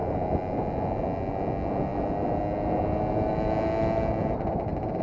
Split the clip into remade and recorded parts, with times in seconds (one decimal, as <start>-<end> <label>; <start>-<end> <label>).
0.0-5.0 recorded

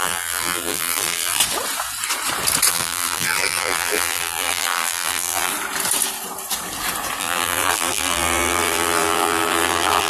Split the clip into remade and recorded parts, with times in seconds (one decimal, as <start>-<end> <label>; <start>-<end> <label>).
0.0-1.4 remade; 1.4-2.7 recorded; 2.7-5.5 remade; 5.5-7.2 recorded; 7.2-10.1 remade

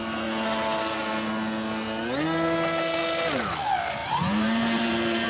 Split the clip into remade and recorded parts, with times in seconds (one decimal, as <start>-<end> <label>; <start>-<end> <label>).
0.0-4.0 recorded; 4.0-5.3 remade